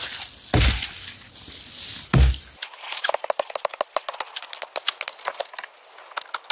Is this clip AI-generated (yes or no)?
no